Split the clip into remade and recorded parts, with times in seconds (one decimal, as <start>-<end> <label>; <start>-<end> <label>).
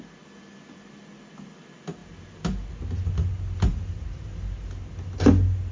0.0-3.7 recorded; 3.7-4.3 remade; 4.3-5.7 recorded